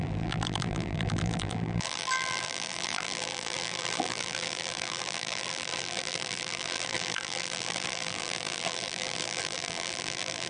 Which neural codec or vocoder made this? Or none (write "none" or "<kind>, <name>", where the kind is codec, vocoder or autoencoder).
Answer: vocoder, BigVGAN v2